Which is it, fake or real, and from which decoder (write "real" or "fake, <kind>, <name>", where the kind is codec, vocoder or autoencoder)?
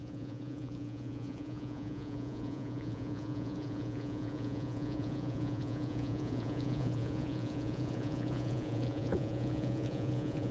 fake, vocoder, Vocos